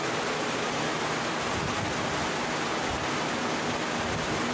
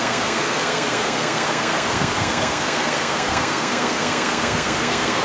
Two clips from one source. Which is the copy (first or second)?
second